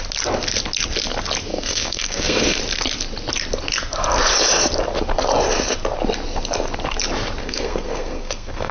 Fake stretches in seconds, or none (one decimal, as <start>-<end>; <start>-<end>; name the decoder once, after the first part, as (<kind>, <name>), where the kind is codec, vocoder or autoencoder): 1.5-2.6 (codec, SNAC); 7.4-8.7